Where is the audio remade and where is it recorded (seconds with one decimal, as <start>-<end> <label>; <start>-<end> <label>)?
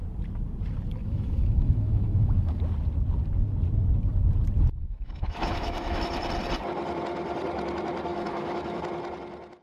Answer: 0.0-1.0 recorded; 1.0-2.6 remade; 2.6-4.8 recorded; 4.8-6.1 remade; 6.1-8.1 recorded; 8.1-8.8 remade; 8.8-9.6 recorded